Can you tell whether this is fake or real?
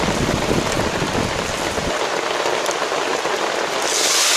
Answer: real